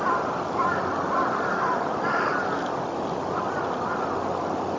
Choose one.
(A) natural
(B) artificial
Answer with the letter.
A